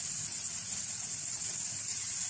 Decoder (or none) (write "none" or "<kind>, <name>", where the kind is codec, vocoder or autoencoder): none